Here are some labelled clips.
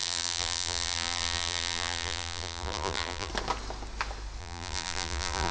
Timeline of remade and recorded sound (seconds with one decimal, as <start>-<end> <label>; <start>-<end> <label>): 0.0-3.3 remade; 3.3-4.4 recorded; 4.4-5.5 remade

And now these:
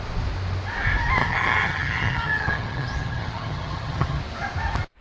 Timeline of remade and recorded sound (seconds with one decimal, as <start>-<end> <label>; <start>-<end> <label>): 0.0-1.2 recorded; 1.2-4.2 remade; 4.2-5.0 recorded

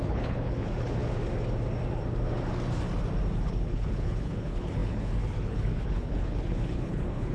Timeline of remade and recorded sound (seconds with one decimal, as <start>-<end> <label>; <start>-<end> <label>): 0.0-1.0 remade; 1.0-3.4 recorded; 3.4-7.3 remade

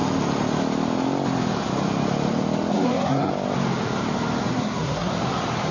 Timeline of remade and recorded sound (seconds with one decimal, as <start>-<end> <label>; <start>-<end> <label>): 0.0-2.7 recorded; 2.7-3.3 remade; 3.3-4.5 recorded; 4.5-5.1 remade; 5.1-5.7 recorded

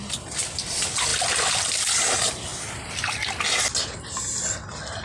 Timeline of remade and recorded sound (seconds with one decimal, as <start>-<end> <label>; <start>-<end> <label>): 0.0-5.0 recorded

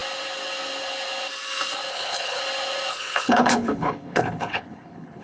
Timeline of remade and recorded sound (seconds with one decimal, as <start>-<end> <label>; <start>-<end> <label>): 0.0-1.9 recorded; 1.9-2.4 remade; 2.4-2.9 recorded; 2.9-5.2 remade

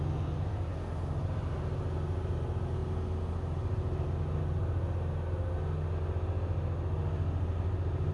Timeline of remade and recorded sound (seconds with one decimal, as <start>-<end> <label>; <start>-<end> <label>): 0.0-8.1 recorded